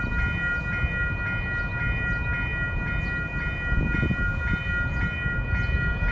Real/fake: real